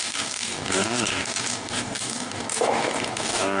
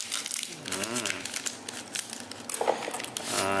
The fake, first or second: first